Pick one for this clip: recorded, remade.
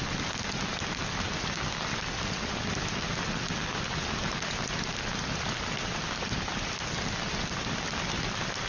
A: recorded